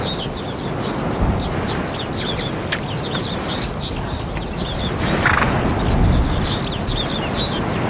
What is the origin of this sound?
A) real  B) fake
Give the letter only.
A